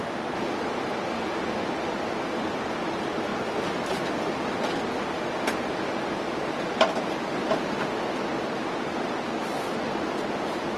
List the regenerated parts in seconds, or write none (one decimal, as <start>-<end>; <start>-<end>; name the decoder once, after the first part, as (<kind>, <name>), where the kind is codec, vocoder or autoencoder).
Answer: none

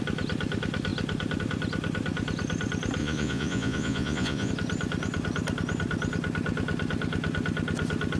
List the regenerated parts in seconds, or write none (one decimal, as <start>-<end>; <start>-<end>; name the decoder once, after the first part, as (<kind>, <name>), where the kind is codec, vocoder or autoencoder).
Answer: 3.0-4.5 (vocoder, Vocos)

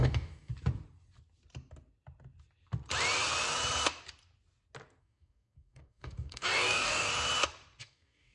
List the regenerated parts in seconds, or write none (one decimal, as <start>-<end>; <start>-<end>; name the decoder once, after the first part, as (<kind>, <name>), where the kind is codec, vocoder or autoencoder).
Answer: 0.0-0.5 (codec, DAC); 5.0-7.1; 7.8-8.3

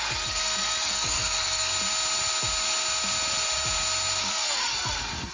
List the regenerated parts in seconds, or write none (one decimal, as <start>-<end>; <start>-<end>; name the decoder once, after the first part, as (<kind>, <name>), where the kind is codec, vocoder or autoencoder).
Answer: 0.0-1.7 (codec, SNAC); 4.2-5.3

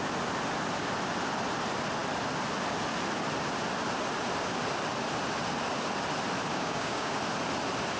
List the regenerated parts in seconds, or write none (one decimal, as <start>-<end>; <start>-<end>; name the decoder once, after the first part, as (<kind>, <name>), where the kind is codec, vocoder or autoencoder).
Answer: 6.5-7.2 (codec, DAC)

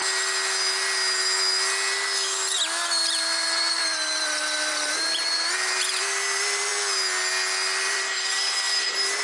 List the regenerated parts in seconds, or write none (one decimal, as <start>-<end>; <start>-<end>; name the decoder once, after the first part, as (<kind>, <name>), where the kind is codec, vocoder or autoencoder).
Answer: 3.0-3.8 (vocoder, BigVGAN v2); 4.7-6.7; 7.9-9.2

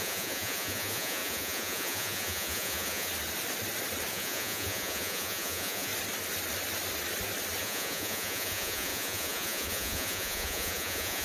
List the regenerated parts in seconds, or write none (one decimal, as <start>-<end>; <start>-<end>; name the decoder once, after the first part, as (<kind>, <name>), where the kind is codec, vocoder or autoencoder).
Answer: 0.0-3.1 (vocoder, Vocos); 4.1-5.9; 7.6-11.2

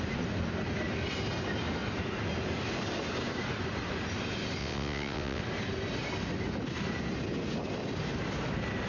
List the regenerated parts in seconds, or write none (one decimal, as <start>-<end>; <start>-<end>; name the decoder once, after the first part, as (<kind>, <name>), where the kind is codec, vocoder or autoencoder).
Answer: 4.6-5.4 (vocoder, WaveNeXt)